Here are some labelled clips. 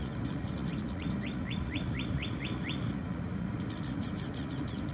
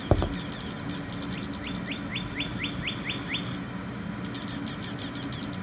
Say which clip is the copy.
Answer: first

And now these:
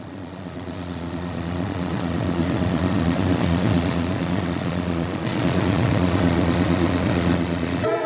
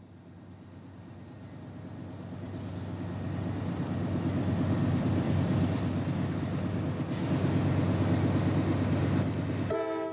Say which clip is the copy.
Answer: first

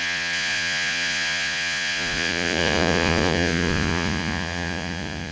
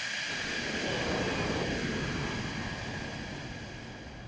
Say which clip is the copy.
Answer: first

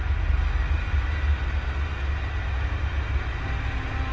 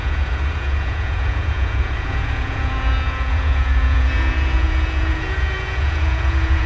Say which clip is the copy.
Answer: second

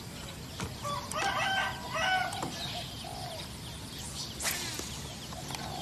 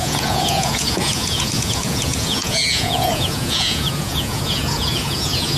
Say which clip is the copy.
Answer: second